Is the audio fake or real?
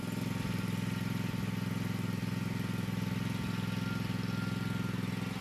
real